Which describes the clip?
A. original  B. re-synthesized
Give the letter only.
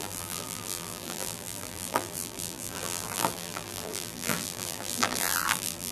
B